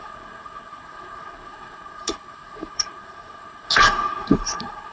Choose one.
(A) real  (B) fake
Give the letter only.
B